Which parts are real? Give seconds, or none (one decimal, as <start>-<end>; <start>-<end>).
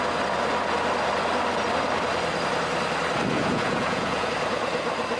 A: 0.0-3.4; 4.3-5.2